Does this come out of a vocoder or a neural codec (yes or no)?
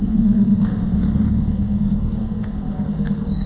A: yes